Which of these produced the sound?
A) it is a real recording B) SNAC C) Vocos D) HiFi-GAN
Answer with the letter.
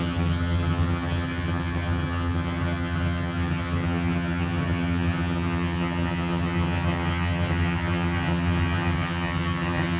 D